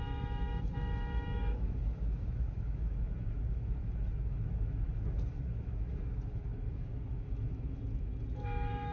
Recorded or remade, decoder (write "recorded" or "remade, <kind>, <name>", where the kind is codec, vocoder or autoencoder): remade, autoencoder, DAC-VAE